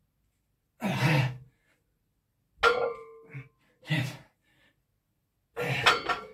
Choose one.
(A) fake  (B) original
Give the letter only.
B